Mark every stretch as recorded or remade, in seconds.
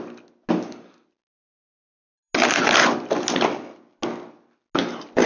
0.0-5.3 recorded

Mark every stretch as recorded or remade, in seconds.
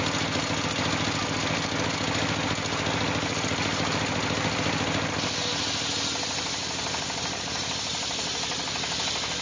0.0-9.4 recorded